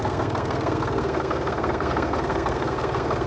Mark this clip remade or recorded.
remade